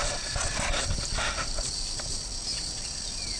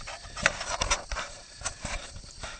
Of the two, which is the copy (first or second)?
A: second